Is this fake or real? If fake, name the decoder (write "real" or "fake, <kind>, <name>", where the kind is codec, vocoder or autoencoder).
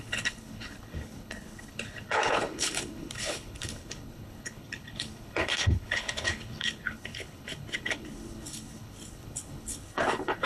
fake, codec, HILCodec